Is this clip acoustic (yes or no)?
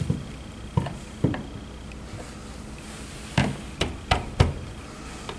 yes